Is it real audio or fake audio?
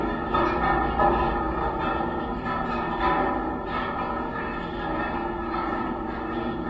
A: real